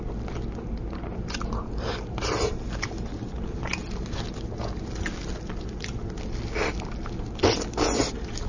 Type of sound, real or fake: real